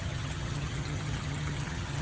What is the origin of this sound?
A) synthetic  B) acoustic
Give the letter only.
A